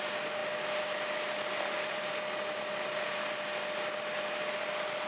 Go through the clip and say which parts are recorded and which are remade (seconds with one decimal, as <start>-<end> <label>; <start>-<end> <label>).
0.0-5.1 recorded